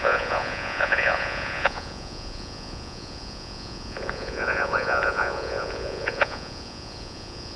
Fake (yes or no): yes